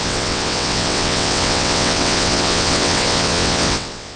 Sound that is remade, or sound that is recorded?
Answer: remade